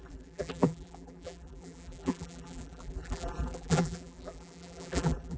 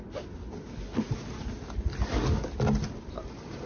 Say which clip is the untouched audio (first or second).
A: second